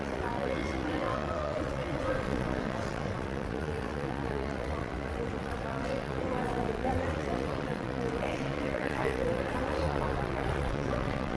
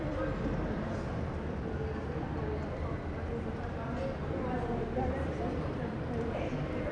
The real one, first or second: second